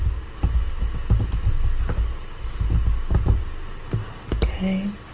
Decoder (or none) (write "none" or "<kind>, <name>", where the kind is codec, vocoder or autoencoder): none